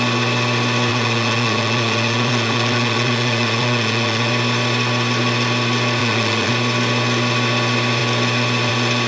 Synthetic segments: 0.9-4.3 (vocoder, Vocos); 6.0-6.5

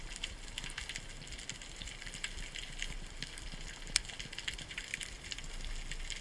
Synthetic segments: none

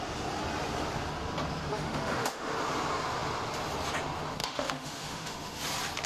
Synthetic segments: 1.7-2.5 (autoencoder, DAC-VAE); 4.4-5.6

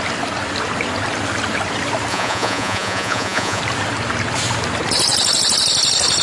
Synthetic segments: 2.1-3.6 (vocoder, Vocos)

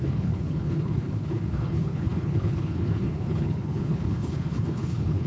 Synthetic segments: 0.0-5.3 (codec, HILCodec)

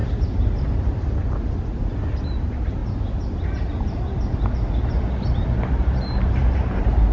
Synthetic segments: none

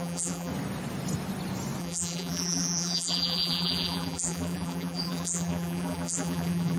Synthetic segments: 0.0-0.5 (vocoder, BigVGAN v2); 1.8-6.8

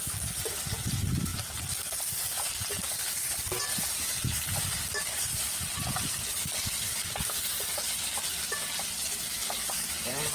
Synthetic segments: none